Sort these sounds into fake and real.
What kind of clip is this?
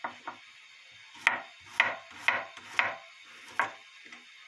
real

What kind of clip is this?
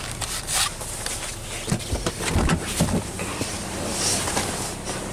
real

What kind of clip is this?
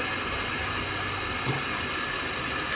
real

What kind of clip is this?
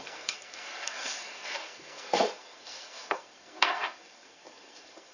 fake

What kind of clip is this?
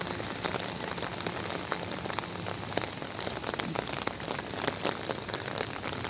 real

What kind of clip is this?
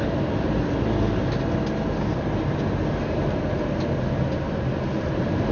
real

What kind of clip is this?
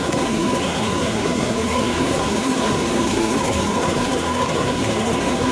fake